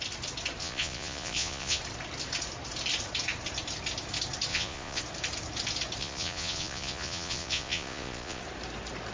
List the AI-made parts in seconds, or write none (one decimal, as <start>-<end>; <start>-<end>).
0.6-1.8; 4.5-5.0; 6.0-8.4